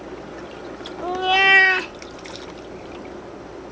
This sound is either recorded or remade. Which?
recorded